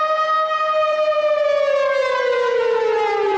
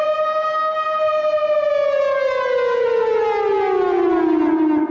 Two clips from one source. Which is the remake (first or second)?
first